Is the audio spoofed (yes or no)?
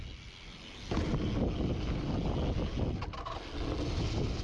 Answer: no